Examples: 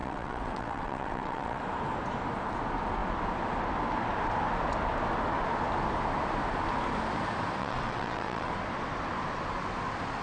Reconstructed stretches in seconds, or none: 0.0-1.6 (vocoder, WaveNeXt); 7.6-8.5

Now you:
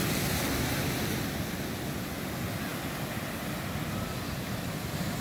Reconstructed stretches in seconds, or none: none

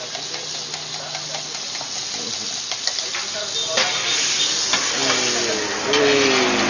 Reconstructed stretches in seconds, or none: none

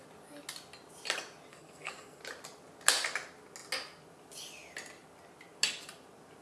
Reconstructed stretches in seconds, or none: 1.5-2.2 (codec, SNAC)

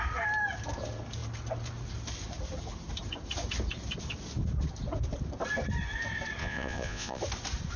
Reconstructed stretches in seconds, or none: 6.4-7.2 (vocoder, Vocos)